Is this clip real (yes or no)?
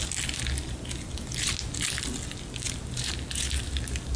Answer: yes